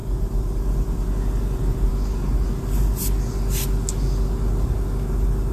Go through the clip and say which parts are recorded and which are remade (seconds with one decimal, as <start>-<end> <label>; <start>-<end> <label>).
0.0-5.5 recorded